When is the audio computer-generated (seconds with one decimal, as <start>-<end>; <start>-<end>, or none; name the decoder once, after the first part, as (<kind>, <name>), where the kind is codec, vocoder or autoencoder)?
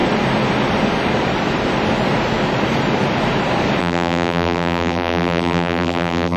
3.8-6.4 (vocoder, BigVGAN v2)